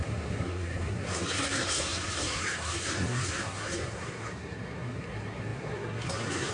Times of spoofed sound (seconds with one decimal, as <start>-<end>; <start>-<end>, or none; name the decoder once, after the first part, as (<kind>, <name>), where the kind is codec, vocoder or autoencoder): 0.0-6.5 (codec, SNAC)